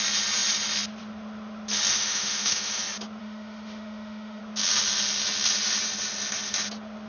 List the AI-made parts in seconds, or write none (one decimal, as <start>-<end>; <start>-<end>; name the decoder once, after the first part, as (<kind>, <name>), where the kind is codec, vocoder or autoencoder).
1.9-2.8 (autoencoder, DAC-VAE); 3.2-4.4